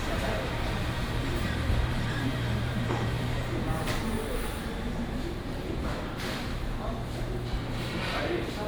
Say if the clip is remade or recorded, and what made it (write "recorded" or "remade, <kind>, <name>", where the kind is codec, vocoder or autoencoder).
remade, vocoder, BigVGAN v2